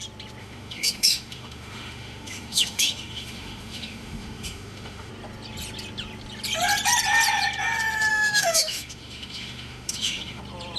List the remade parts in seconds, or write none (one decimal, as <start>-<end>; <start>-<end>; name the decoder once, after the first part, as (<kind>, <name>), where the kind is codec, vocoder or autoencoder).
0.4-5.1 (autoencoder, DAC-VAE); 8.1-10.4